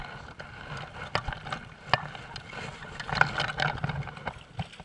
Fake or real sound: real